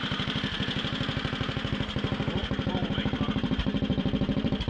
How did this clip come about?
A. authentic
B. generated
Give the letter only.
B